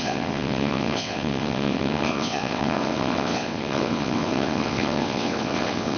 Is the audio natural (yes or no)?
no